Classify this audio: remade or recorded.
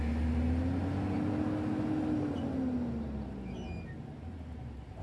recorded